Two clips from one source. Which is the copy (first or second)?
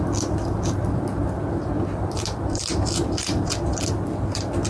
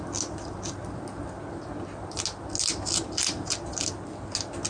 first